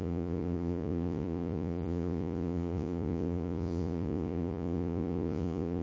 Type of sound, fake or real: fake